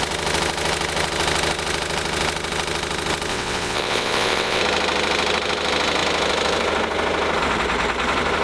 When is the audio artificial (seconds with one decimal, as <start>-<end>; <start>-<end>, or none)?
3.3-4.6